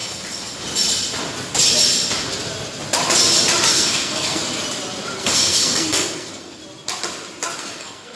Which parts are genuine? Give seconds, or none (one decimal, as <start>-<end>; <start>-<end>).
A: 0.0-3.7; 4.4-5.2; 6.6-7.6